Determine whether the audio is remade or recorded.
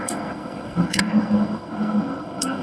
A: remade